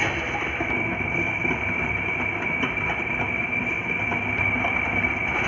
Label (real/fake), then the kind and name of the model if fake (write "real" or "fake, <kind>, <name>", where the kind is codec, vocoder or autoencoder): real